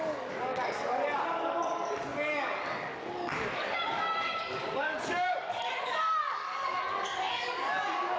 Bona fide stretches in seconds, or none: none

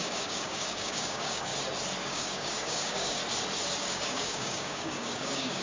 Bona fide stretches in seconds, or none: 1.5-2.0; 3.2-3.8